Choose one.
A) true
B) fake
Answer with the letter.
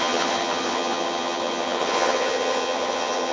B